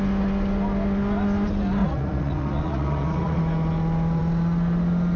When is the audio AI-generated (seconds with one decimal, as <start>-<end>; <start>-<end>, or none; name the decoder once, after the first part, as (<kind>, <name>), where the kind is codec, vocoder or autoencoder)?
1.8-3.4 (vocoder, Vocos)